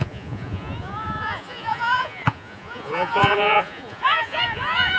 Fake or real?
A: fake